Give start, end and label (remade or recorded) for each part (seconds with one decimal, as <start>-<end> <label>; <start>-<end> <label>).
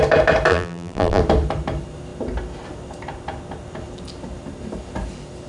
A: 0.0-0.5 recorded; 0.5-1.2 remade; 1.2-5.5 recorded